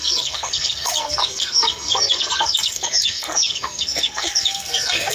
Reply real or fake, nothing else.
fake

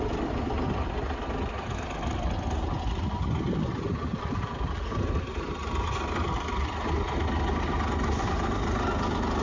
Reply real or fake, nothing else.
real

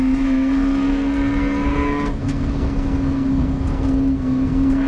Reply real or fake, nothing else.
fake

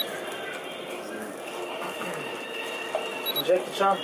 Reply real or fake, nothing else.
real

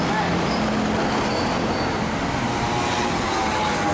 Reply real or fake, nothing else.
real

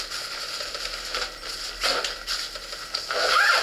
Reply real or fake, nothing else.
real